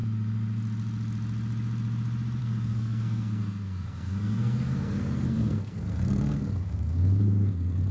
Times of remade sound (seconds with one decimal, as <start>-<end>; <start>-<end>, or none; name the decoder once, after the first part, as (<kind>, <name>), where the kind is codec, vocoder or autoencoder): 2.4-7.9 (codec, SNAC)